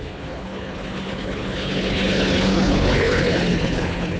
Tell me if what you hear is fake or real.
fake